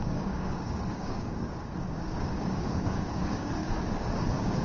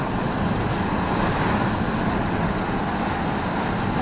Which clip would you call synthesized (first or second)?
first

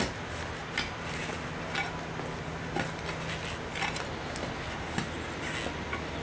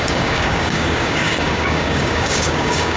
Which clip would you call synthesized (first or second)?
second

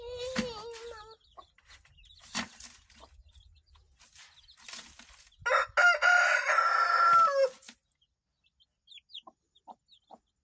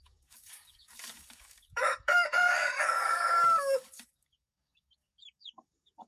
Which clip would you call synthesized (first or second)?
second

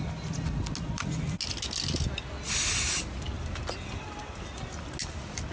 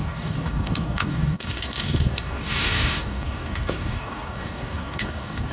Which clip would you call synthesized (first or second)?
second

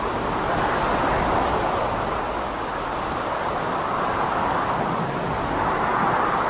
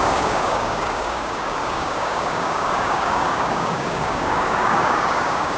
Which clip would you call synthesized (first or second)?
second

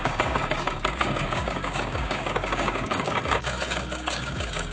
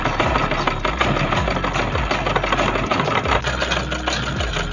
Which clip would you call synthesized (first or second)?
first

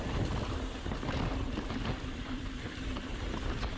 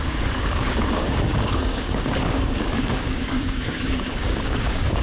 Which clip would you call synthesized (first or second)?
second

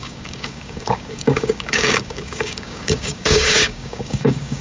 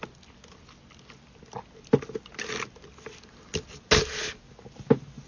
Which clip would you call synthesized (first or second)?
first